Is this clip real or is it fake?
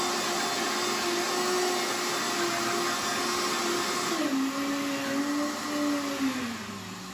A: real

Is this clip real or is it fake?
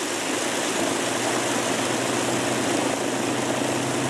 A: real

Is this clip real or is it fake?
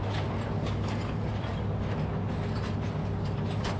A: real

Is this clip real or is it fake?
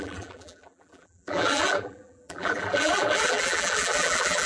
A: fake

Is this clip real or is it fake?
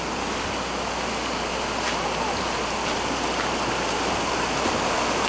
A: real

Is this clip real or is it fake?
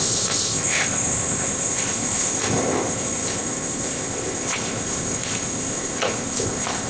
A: fake